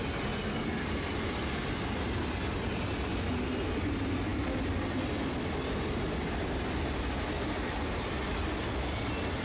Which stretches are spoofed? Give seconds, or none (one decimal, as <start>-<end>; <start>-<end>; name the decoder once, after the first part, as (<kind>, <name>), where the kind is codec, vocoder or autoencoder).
none